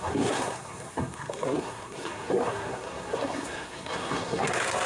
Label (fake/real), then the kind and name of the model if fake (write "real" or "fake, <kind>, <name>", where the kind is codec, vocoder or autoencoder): fake, codec, SNAC